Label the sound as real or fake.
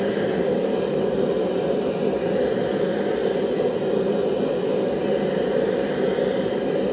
real